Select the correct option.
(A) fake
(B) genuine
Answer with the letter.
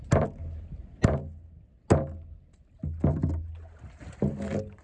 B